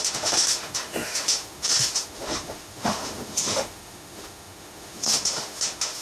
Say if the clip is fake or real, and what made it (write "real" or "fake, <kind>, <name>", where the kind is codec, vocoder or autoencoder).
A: fake, autoencoder, DAC-VAE